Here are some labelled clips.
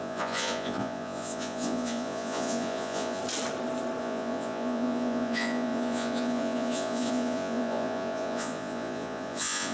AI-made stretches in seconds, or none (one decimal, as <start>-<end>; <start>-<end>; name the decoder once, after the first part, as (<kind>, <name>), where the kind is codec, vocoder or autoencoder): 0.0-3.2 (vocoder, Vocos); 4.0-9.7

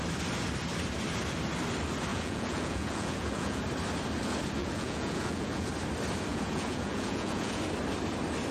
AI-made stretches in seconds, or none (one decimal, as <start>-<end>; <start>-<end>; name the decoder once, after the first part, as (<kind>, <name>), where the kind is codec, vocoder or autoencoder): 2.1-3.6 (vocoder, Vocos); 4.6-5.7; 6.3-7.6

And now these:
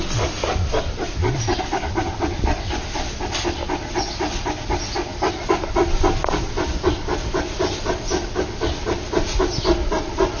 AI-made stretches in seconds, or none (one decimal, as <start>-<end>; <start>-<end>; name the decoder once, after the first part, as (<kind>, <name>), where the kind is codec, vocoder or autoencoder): none

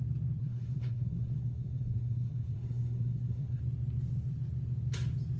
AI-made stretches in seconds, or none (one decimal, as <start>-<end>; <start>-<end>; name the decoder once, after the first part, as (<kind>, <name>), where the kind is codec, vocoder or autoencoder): 0.4-3.6 (codec, SNAC)

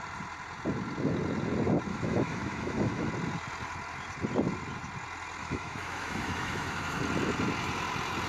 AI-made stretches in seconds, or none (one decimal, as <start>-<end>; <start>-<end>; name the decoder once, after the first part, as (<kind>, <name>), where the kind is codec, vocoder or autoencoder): 1.9-3.1 (autoencoder, DAC-VAE); 5.4-7.0

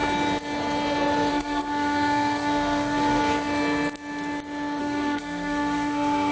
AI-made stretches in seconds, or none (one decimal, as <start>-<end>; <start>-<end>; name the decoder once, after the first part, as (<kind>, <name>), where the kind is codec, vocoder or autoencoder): 1.3-3.2 (codec, SNAC); 4.8-6.3